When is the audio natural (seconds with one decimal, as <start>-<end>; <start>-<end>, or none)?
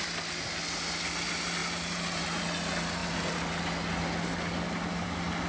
0.0-1.6; 2.4-3.0; 3.7-5.5